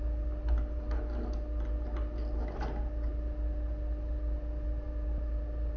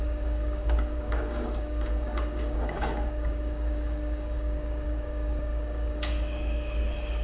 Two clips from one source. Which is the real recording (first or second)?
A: first